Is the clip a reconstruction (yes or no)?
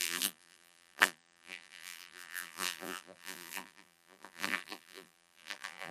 yes